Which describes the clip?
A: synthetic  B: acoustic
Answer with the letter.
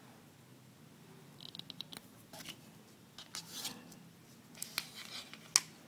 B